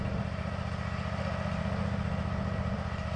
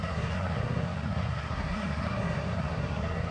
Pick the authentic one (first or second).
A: first